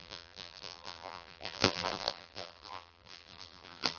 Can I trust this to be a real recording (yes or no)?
no